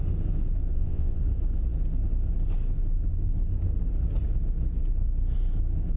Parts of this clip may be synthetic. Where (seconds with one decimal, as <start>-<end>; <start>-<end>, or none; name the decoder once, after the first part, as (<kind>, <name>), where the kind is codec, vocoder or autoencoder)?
0.7-1.2 (vocoder, Vocos)